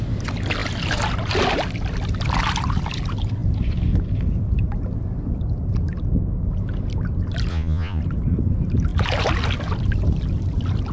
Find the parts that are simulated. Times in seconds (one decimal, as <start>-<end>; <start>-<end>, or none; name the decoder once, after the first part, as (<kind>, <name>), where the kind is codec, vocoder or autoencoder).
7.5-8.0 (vocoder, Vocos)